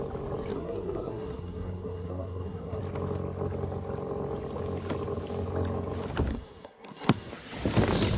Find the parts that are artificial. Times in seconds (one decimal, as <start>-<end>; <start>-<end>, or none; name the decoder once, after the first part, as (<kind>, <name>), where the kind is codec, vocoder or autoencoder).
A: 0.5-2.8 (codec, SNAC); 6.3-7.3